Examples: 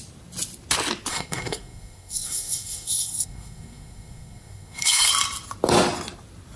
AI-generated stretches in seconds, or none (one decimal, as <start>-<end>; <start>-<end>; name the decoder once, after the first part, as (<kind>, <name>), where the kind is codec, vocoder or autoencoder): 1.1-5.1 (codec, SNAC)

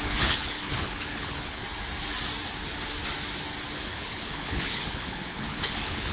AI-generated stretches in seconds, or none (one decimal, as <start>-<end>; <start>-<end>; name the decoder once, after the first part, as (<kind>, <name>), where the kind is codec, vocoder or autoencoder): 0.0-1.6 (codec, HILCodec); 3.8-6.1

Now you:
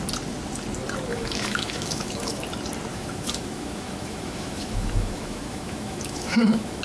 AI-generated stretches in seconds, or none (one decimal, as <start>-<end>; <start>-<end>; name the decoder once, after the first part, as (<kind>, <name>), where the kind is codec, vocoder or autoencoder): 1.1-2.4 (autoencoder, DAC-VAE); 2.9-6.8